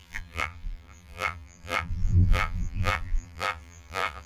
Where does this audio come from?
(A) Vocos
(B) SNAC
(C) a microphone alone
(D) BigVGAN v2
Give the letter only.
D